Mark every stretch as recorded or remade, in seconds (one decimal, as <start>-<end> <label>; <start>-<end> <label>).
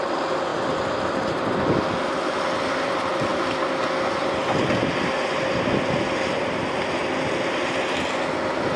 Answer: 0.0-8.8 recorded